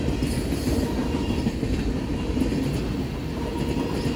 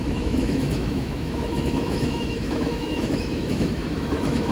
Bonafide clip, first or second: first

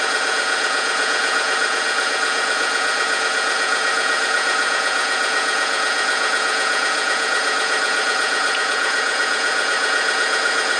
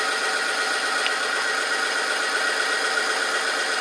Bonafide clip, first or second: second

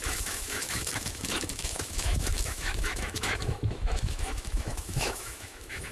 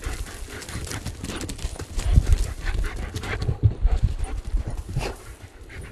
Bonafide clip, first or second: second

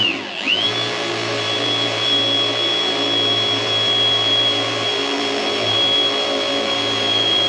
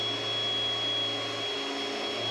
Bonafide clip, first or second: second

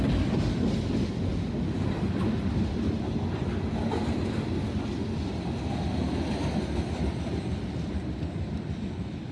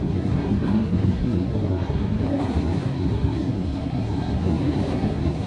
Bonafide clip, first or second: first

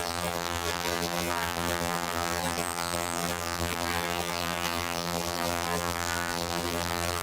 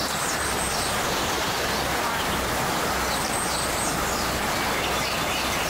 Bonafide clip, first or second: second